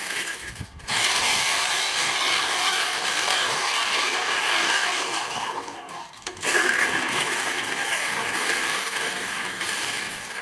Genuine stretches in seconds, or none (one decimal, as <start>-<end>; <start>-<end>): none